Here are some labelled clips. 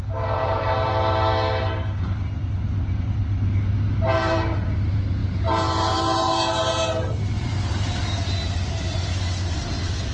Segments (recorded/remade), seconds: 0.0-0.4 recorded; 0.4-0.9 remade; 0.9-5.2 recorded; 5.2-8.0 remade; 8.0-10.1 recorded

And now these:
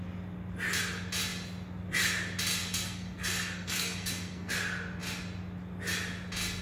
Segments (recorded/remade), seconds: 0.0-2.6 recorded; 2.6-4.5 remade; 4.5-6.6 recorded

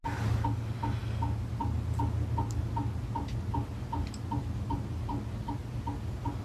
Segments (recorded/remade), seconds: 0.0-6.4 recorded

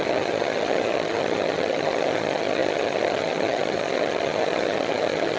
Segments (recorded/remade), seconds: 0.0-5.4 remade

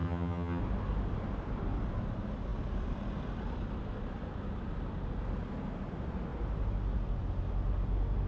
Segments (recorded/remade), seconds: 0.0-0.6 remade; 0.6-8.3 recorded

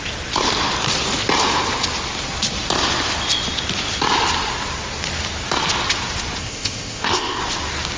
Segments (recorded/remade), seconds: 0.0-6.4 recorded; 6.4-7.4 remade; 7.4-8.0 recorded

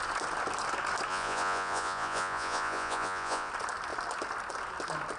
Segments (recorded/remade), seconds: 0.0-1.1 recorded; 1.1-3.5 remade; 3.5-5.2 recorded